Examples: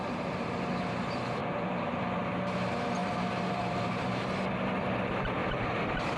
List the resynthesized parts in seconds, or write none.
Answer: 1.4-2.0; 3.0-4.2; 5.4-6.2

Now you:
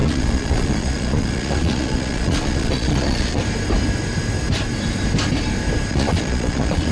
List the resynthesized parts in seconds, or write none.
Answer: 0.0-3.4; 5.9-6.9

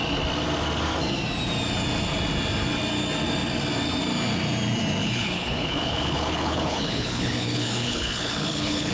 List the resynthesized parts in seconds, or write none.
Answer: 5.0-8.9

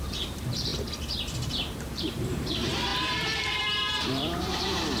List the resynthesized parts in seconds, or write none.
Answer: 0.0-0.7; 1.5-5.0